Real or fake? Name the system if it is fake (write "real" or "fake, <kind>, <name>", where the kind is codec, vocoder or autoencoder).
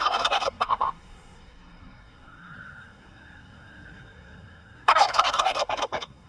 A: fake, codec, SNAC